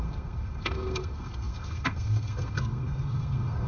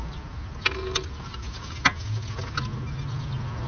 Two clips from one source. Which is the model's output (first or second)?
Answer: first